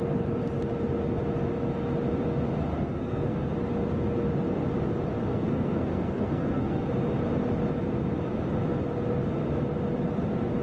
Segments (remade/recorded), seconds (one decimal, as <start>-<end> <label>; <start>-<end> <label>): 0.0-2.7 recorded; 2.7-3.5 remade; 3.5-5.3 recorded; 5.3-6.9 remade; 6.9-10.6 recorded